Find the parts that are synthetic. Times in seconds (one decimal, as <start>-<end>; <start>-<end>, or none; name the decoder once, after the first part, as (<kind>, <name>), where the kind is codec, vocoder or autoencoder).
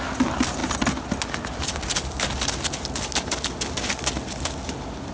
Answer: none